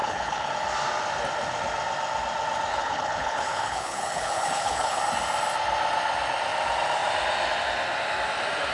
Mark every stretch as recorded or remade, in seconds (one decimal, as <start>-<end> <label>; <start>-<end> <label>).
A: 0.0-0.5 remade; 0.5-2.7 recorded; 2.7-5.0 remade; 5.0-8.7 recorded